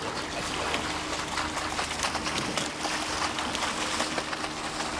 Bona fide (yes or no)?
yes